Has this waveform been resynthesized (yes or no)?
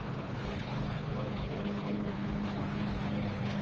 yes